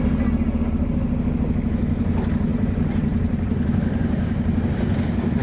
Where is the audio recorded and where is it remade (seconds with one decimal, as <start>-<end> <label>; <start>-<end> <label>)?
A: 0.0-2.5 recorded; 2.5-4.6 remade; 4.6-5.4 recorded